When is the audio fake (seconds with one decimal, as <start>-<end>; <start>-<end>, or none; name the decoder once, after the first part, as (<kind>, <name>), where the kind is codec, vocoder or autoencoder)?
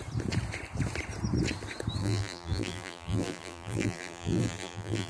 2.0-5.1 (vocoder, BigVGAN v2)